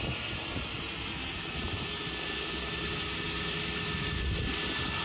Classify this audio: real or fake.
real